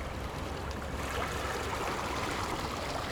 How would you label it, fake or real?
real